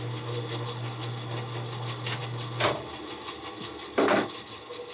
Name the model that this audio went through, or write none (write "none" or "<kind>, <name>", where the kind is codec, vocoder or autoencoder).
none